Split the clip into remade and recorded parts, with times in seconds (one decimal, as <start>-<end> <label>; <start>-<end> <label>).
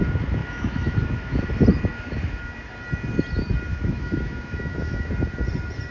0.0-0.4 recorded; 0.4-1.4 remade; 1.4-1.9 recorded; 1.9-2.4 remade; 2.4-3.7 recorded; 3.7-5.1 remade; 5.1-5.9 recorded